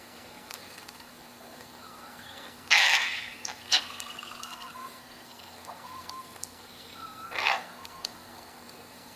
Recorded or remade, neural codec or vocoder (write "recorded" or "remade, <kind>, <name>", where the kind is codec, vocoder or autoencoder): remade, codec, SNAC